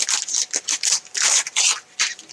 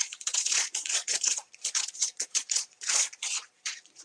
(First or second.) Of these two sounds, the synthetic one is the second